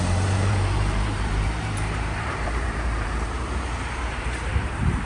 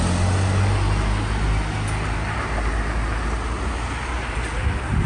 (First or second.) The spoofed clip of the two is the first